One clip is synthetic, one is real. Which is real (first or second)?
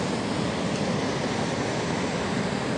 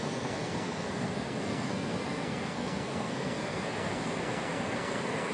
first